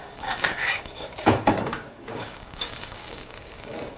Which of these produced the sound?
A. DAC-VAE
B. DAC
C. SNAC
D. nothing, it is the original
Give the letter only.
B